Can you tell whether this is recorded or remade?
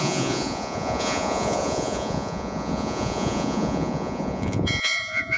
remade